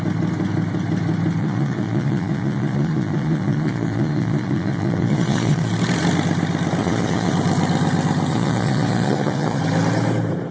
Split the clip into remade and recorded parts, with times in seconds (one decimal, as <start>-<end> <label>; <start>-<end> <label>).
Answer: 0.0-1.4 recorded; 1.4-5.7 remade; 5.7-6.8 recorded; 6.8-7.3 remade; 7.3-8.3 recorded; 8.3-9.6 remade; 9.6-10.5 recorded